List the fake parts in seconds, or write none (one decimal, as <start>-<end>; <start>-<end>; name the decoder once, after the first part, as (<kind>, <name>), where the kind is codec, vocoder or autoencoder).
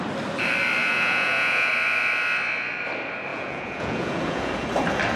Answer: 0.8-1.7 (vocoder, Vocos); 3.3-4.5